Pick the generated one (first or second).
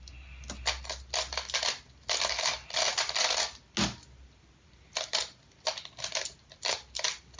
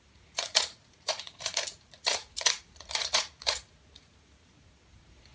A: second